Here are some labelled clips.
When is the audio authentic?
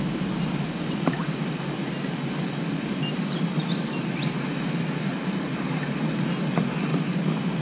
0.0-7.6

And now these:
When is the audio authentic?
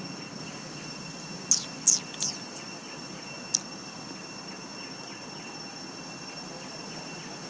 0.0-7.5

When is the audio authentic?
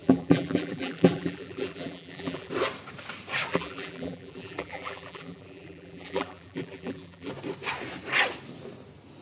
2.5-3.5; 7.3-9.2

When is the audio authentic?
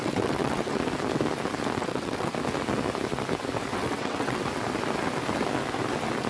0.8-1.8; 2.3-3.7; 4.4-6.3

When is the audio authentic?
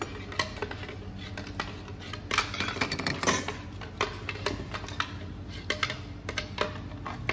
0.0-7.3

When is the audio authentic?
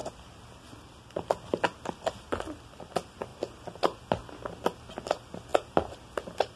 0.0-6.6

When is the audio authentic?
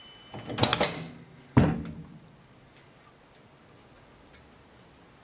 0.0-5.2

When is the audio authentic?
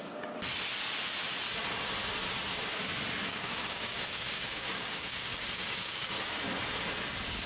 0.0-3.3; 6.1-7.5